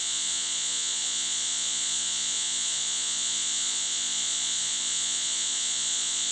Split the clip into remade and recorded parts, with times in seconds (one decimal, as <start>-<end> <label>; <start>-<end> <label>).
0.0-6.3 remade

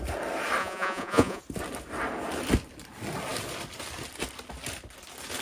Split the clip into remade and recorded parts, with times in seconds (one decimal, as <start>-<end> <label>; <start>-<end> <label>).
0.0-0.6 recorded; 0.6-1.4 remade; 1.4-5.4 recorded